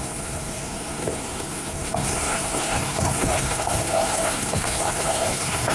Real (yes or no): no